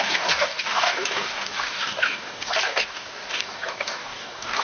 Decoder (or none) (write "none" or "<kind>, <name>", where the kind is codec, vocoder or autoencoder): codec, DAC